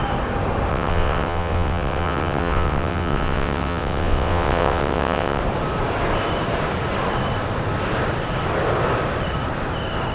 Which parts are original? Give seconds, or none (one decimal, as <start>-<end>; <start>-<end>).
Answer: 0.0-0.7; 5.4-10.1